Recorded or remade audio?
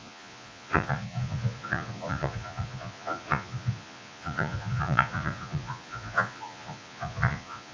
remade